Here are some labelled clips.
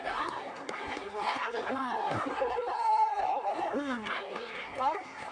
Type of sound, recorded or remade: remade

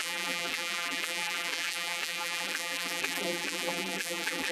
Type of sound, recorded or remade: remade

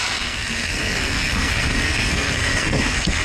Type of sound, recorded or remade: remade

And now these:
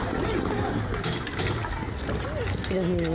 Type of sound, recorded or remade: recorded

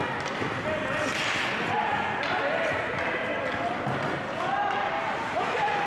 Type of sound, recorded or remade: recorded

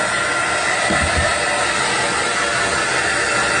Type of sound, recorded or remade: recorded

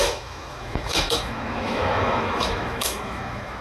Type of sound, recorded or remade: remade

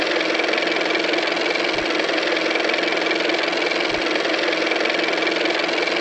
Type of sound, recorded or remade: recorded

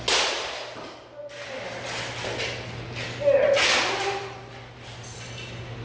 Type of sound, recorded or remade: recorded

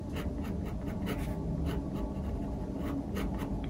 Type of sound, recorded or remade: recorded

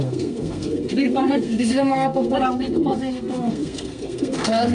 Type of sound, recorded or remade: remade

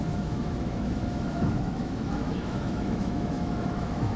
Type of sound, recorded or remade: remade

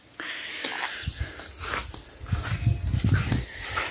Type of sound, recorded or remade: recorded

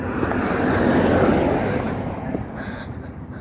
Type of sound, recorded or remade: recorded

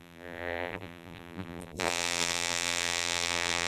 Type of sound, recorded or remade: remade